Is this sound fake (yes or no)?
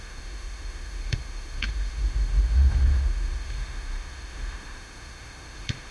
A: yes